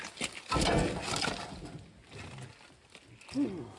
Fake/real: real